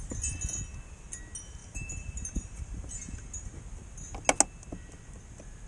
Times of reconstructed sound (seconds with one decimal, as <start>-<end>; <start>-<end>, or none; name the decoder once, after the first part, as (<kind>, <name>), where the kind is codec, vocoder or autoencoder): 1.6-3.6 (vocoder, BigVGAN v2)